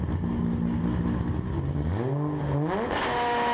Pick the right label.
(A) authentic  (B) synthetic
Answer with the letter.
A